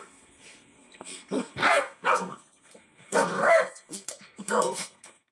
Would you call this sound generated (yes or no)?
yes